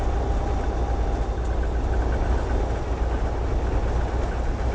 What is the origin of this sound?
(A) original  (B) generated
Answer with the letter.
A